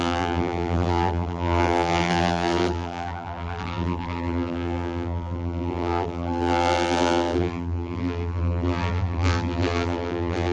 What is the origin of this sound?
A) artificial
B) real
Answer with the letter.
A